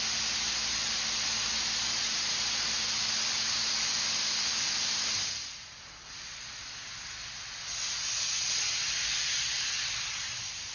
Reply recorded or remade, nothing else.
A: recorded